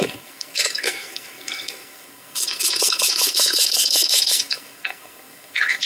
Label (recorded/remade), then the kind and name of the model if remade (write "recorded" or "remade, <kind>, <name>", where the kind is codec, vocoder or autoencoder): remade, codec, SNAC